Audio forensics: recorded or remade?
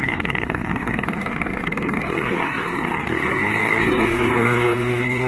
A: remade